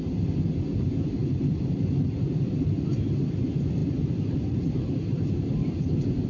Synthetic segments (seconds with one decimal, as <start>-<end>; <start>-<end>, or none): none